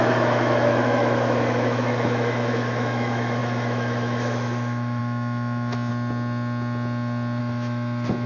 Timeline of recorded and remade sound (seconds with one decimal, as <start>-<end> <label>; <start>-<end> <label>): 0.0-5.9 remade; 5.9-7.4 recorded; 7.4-8.3 remade